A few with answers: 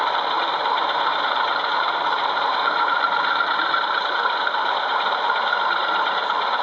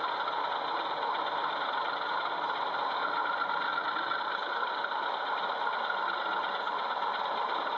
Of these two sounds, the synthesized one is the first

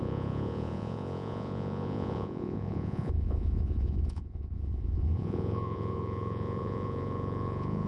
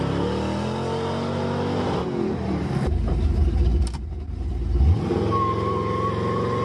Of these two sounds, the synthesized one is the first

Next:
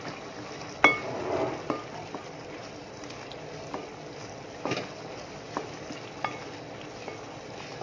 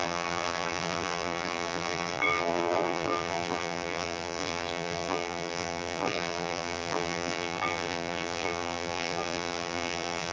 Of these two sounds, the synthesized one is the second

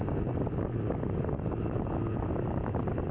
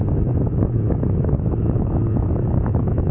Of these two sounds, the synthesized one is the second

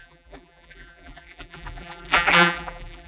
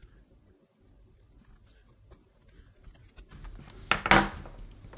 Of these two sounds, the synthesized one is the first